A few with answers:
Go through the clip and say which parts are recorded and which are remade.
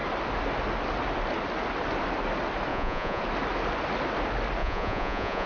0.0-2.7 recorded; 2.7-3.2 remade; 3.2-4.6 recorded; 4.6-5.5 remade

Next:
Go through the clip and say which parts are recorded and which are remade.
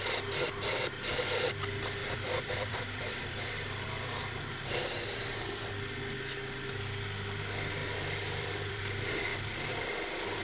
0.0-2.0 recorded; 2.0-5.7 remade; 5.7-7.8 recorded; 7.8-8.8 remade; 8.8-9.3 recorded; 9.3-10.4 remade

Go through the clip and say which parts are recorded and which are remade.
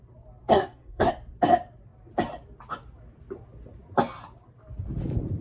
0.0-0.5 recorded; 0.5-1.1 remade; 1.1-5.4 recorded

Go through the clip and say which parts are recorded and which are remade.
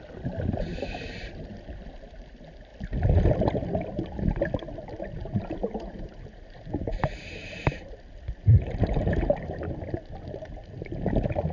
0.0-0.7 recorded; 0.7-1.5 remade; 1.5-5.2 recorded; 5.2-9.6 remade; 9.6-11.5 recorded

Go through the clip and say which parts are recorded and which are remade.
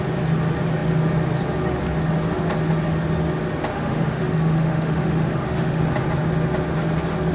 0.0-3.7 recorded; 3.7-5.8 remade; 5.8-7.3 recorded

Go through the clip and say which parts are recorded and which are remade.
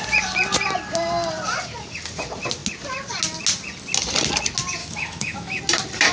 0.0-4.8 recorded; 4.8-5.6 remade; 5.6-6.1 recorded